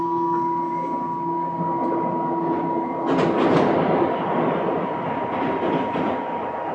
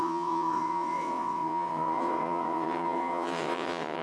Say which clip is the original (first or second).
first